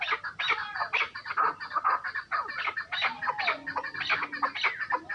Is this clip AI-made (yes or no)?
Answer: no